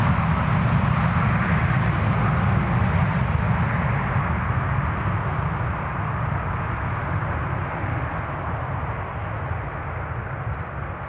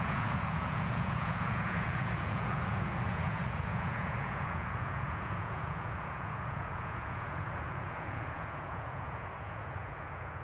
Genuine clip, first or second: first